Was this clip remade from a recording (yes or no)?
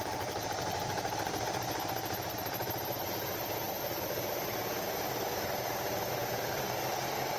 yes